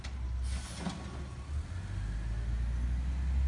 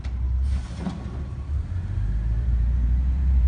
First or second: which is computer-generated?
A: second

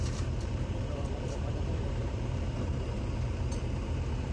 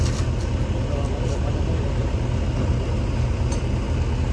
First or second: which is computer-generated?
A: first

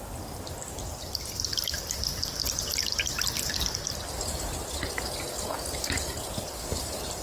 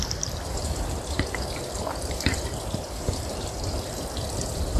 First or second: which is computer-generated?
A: second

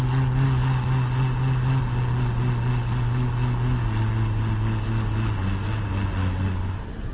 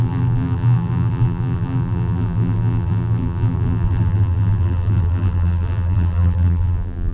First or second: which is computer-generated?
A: second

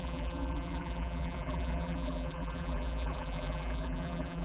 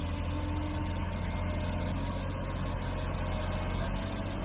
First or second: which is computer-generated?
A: first